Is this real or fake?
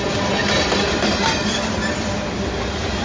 real